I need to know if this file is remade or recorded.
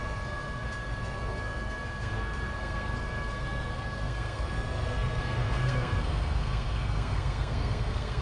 remade